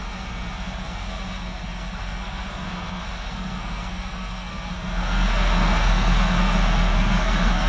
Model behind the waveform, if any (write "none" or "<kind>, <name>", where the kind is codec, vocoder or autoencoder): codec, SNAC